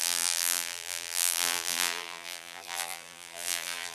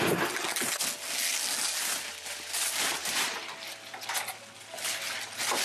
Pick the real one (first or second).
second